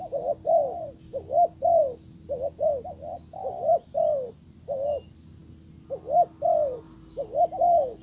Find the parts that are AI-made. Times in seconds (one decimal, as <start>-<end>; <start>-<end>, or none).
none